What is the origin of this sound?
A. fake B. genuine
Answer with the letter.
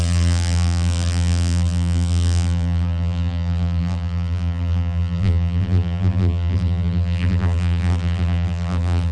A